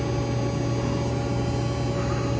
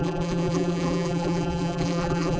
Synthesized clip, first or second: second